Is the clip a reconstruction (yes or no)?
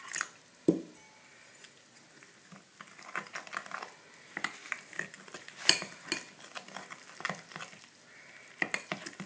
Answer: no